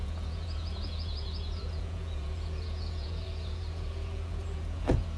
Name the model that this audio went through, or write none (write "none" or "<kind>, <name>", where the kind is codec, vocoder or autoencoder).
vocoder, Vocos